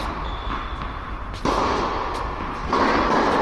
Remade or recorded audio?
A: recorded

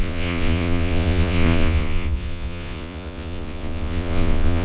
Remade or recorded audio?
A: remade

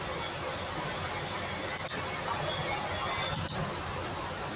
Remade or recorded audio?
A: recorded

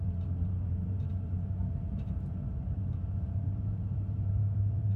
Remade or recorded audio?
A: remade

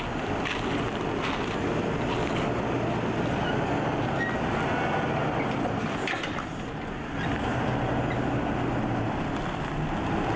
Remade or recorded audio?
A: recorded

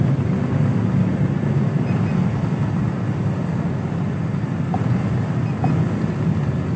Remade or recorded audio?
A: recorded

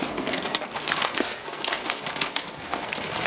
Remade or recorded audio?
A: remade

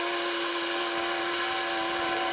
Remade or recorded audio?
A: recorded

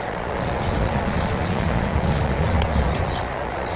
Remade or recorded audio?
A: remade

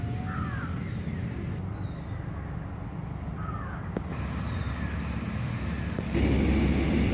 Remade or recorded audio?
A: recorded